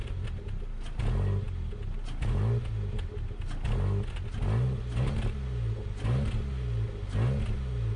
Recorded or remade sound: recorded